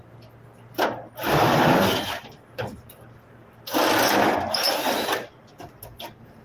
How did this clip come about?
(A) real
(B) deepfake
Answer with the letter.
A